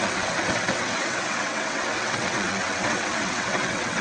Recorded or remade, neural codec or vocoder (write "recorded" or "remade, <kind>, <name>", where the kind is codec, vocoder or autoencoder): remade, vocoder, WaveNeXt